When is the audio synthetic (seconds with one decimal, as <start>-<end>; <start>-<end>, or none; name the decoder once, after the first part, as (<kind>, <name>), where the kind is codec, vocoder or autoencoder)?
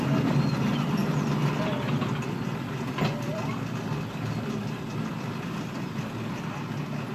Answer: none